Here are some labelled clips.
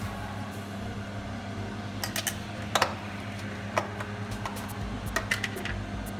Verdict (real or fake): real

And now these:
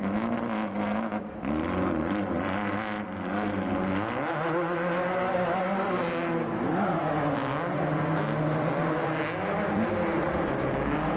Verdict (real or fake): real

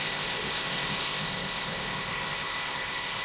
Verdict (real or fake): fake